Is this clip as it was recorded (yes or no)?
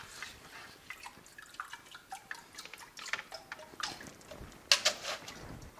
yes